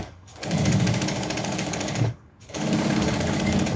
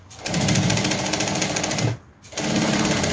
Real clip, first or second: second